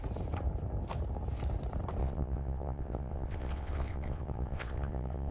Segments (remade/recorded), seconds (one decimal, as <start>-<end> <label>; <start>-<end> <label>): 0.0-2.0 recorded; 2.0-5.3 remade